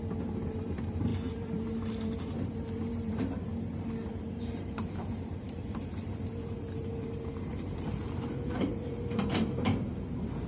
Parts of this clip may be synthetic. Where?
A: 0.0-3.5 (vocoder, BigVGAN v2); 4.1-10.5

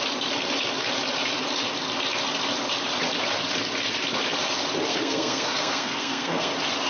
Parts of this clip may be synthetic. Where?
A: 4.9-6.5 (codec, SNAC)

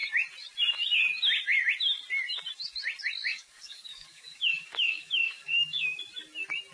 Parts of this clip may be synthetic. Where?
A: 3.3-6.0 (codec, DAC)

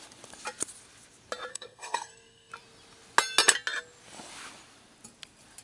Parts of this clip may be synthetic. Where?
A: 1.5-2.5 (codec, SNAC)

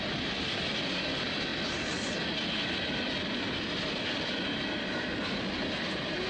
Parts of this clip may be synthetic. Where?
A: none

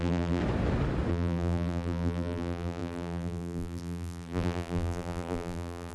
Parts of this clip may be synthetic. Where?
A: 0.0-0.4 (vocoder, BigVGAN v2); 1.1-5.9

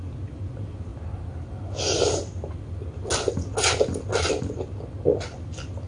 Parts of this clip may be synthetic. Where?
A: none